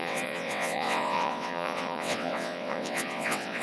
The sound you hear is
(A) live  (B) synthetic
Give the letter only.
B